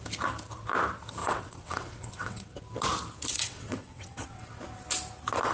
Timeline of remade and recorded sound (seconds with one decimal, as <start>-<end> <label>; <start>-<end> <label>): 0.0-1.2 recorded; 1.2-2.6 remade; 2.6-3.3 recorded; 3.3-4.4 remade; 4.4-5.5 recorded